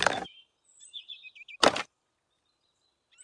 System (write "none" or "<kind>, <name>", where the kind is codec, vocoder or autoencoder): none